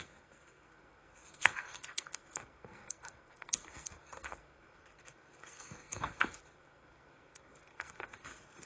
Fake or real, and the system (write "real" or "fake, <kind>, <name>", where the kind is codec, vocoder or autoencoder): fake, codec, SNAC